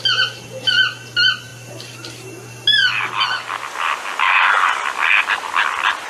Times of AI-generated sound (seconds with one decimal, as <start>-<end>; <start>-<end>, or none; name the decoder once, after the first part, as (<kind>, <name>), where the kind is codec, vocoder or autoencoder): none

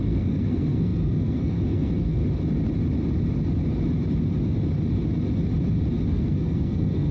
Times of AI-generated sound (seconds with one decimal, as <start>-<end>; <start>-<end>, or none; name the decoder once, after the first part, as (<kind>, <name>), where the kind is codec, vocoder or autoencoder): 0.0-2.2 (codec, SNAC); 6.1-7.1

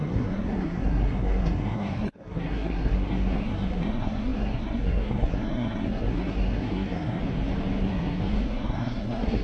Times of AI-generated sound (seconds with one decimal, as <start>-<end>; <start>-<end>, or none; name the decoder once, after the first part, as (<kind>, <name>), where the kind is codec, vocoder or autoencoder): 0.0-7.2 (codec, SNAC); 7.8-9.4

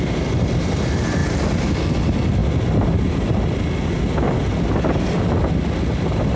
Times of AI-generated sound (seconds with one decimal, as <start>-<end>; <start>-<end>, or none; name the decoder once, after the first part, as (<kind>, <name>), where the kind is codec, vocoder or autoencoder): none

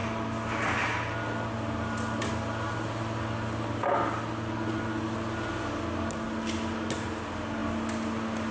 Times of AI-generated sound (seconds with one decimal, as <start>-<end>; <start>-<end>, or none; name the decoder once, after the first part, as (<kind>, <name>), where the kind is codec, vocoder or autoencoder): none